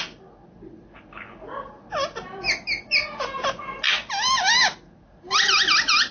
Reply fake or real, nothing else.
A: real